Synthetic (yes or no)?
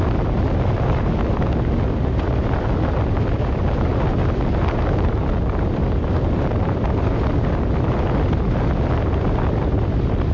no